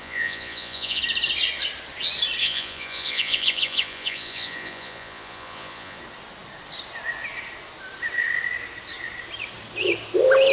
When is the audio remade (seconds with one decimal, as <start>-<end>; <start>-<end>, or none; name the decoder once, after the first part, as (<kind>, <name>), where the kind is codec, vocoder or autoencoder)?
0.0-1.0 (vocoder, Vocos); 2.4-6.0